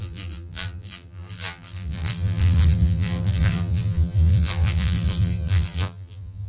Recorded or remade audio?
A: remade